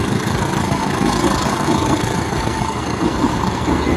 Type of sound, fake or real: fake